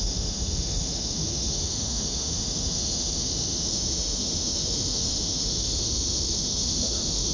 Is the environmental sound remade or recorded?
remade